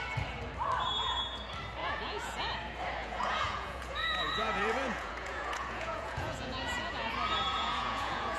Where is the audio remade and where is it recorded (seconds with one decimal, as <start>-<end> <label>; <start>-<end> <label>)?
0.0-1.8 recorded; 1.8-2.4 remade; 2.4-3.0 recorded; 3.0-7.1 remade; 7.1-7.5 recorded; 7.5-8.4 remade